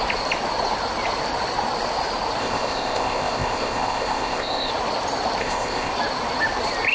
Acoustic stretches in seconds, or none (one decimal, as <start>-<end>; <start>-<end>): 0.0-2.4; 4.7-5.4; 5.9-6.9